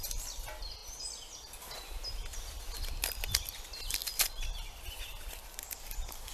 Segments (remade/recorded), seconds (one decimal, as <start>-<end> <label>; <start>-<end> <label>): 0.0-4.0 recorded; 4.0-4.8 remade; 4.8-6.3 recorded